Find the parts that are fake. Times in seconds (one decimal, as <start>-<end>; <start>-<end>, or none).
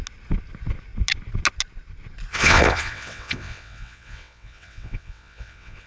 2.3-5.9